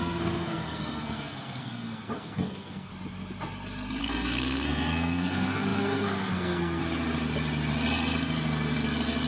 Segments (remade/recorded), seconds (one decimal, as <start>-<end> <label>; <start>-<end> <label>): 0.0-2.9 remade; 2.9-4.0 recorded; 4.0-6.8 remade; 6.8-9.3 recorded